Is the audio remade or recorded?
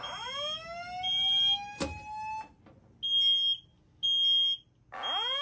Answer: recorded